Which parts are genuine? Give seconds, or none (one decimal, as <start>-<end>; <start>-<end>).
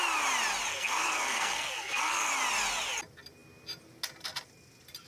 0.0-0.7; 2.3-5.1